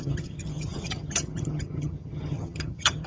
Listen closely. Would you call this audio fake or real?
fake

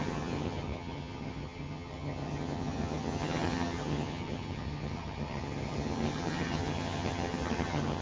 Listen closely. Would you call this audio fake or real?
fake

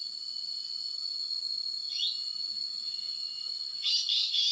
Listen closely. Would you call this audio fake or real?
real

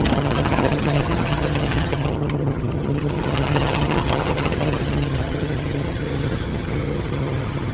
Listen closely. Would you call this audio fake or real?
fake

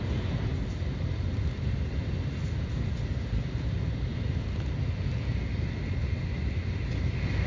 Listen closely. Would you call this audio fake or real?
real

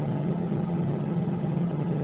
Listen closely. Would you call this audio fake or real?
fake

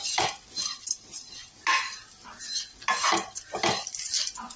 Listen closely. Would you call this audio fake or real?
real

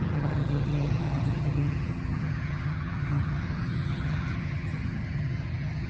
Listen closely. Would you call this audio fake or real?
fake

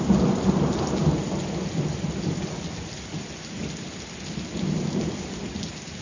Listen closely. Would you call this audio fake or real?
real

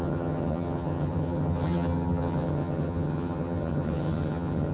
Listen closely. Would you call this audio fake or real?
fake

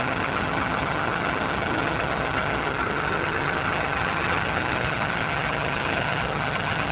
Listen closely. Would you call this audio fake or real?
fake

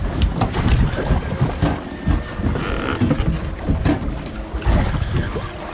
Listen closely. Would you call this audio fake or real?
real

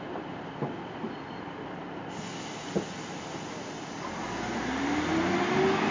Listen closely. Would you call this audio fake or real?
real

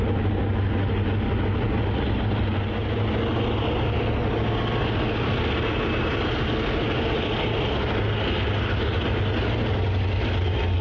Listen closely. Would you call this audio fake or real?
real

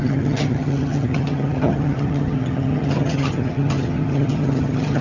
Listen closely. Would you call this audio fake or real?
fake